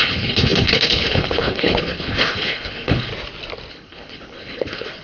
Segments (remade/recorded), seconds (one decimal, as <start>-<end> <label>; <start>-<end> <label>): 0.0-3.1 remade; 3.1-3.7 recorded; 3.7-5.0 remade